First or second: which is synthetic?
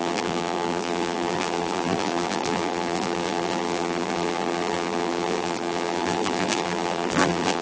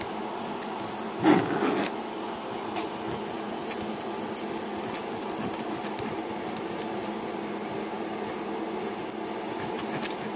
first